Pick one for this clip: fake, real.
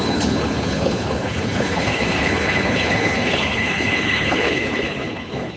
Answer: fake